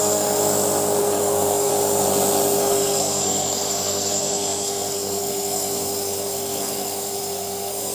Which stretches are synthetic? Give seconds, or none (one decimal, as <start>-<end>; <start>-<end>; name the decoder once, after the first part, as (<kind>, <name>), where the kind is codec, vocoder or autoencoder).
0.0-0.4 (codec, SNAC); 1.0-1.7; 2.6-7.9